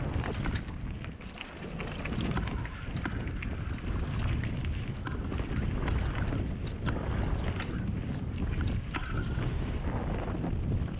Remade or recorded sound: recorded